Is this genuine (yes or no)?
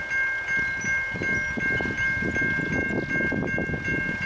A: yes